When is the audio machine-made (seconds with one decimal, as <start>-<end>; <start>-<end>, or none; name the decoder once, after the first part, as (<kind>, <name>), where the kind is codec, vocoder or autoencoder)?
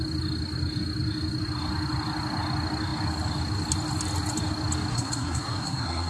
4.9-6.1 (codec, SNAC)